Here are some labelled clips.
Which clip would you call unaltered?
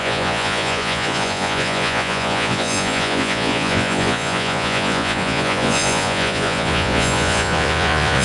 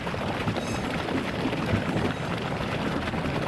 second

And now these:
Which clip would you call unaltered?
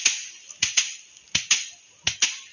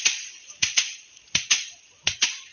first